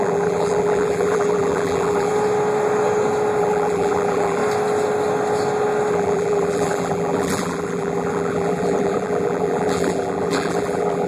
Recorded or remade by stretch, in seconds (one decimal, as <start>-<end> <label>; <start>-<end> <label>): 0.0-2.1 remade; 2.1-3.4 recorded; 3.4-4.4 remade; 4.4-5.9 recorded; 5.9-11.1 remade